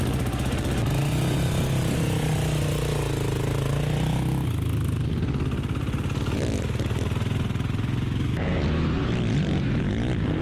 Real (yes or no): yes